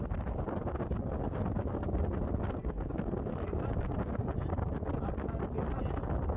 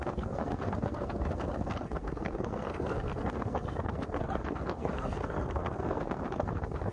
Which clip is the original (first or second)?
first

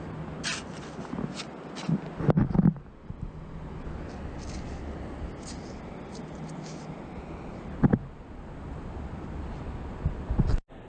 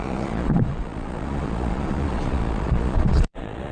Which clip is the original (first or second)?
first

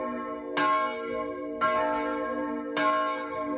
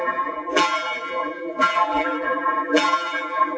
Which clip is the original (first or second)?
first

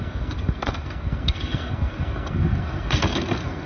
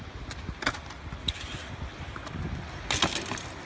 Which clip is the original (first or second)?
second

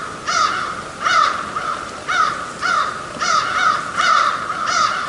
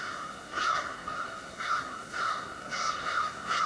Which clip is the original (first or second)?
first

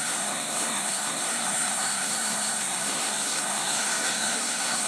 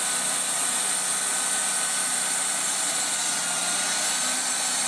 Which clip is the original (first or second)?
second